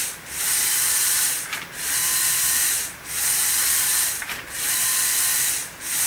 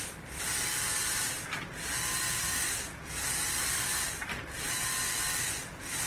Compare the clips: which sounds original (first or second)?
second